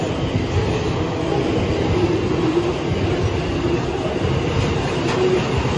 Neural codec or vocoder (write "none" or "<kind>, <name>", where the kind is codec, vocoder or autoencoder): none